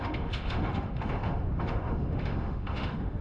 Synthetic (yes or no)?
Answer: yes